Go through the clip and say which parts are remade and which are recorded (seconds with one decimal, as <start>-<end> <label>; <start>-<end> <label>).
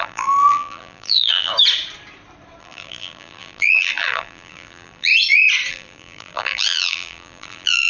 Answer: 0.0-1.5 remade; 1.5-2.6 recorded; 2.6-5.1 remade; 5.1-5.7 recorded; 5.7-7.9 remade